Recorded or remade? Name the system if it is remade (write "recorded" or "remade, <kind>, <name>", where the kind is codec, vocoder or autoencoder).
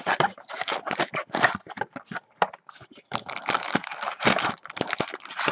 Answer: recorded